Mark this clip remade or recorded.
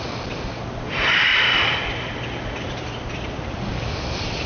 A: remade